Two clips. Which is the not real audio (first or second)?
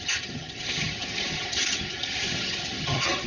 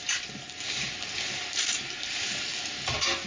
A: first